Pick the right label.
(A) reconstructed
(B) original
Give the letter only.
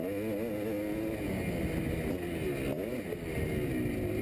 B